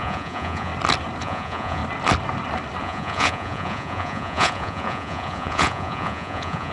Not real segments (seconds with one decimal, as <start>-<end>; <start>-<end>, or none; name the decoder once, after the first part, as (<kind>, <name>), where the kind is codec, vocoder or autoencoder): 0.0-0.7 (vocoder, Vocos); 1.2-1.8; 2.8-6.7